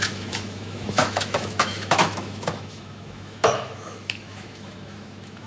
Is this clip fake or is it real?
fake